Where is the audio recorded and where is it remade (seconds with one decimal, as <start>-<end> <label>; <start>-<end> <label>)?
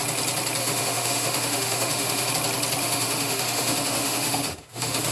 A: 0.0-0.6 recorded; 0.6-2.3 remade; 2.3-2.8 recorded; 2.8-5.1 remade